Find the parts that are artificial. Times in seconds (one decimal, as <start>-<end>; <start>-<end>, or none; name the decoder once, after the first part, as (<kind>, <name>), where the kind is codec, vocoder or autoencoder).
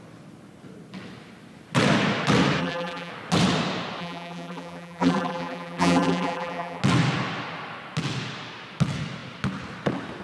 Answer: 2.6-3.1 (vocoder, BigVGAN v2); 4.0-6.8